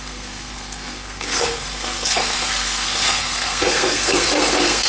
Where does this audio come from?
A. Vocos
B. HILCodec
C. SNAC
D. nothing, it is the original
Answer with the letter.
C